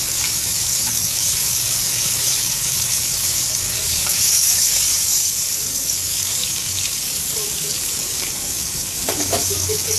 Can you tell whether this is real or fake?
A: fake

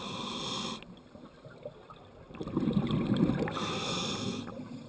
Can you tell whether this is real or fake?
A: real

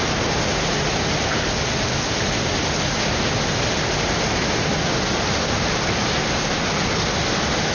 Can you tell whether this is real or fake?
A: real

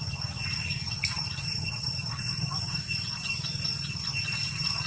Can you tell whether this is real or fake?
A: real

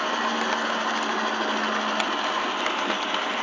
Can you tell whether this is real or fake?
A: real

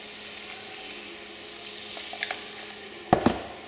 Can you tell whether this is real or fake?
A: real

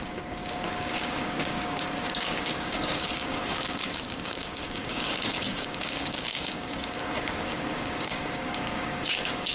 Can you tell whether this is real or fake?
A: fake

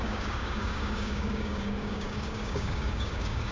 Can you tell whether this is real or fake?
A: fake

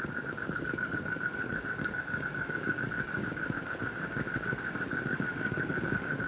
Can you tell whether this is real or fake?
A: fake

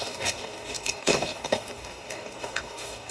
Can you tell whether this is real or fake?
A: fake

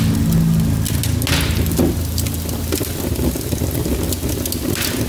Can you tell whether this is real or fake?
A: real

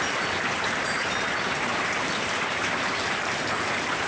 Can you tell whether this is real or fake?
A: real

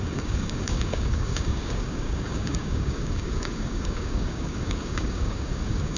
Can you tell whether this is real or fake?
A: fake